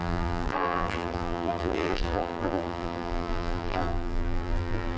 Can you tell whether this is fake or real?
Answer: fake